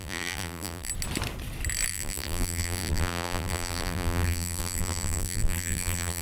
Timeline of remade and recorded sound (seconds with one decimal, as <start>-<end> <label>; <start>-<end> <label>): 0.0-0.9 remade; 0.9-1.9 recorded; 1.9-6.2 remade